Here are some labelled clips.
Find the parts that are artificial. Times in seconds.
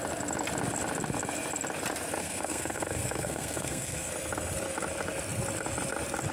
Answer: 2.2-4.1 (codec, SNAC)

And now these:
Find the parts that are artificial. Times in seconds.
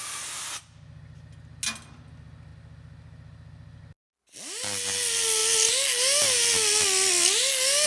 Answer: none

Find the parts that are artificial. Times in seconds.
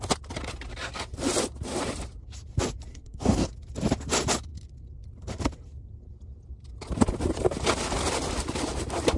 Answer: 2.9-3.5 (codec, SNAC)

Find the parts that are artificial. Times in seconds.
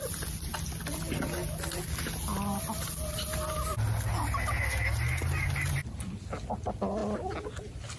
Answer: none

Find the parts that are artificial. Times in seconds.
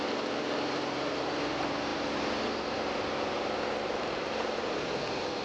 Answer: none